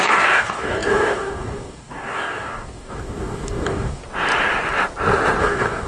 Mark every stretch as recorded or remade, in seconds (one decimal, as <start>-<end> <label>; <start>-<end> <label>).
0.0-4.0 remade; 4.0-5.4 recorded; 5.4-5.9 remade